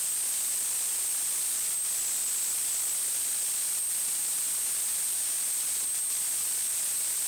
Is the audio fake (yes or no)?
no